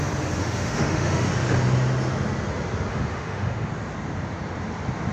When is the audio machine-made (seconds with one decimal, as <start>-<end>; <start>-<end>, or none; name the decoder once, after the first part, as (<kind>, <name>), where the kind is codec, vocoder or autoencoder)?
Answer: 0.4-1.3 (autoencoder, DAC-VAE); 2.9-3.7

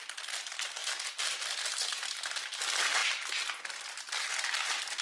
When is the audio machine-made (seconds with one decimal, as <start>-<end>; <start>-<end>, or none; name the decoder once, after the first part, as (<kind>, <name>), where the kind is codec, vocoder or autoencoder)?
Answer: none

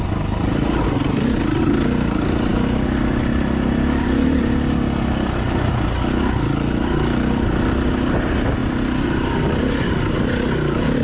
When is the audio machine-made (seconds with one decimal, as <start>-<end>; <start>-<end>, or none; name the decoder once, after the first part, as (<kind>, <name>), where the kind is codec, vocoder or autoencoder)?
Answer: none

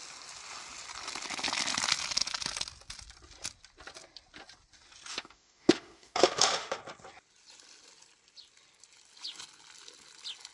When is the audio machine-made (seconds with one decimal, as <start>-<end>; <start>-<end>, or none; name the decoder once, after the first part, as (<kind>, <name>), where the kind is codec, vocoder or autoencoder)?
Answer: 5.1-6.8 (autoencoder, DAC-VAE)

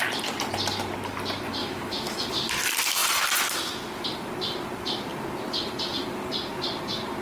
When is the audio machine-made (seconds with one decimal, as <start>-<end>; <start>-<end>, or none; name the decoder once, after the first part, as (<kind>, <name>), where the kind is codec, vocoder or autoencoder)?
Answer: 1.6-2.3 (autoencoder, DAC-VAE)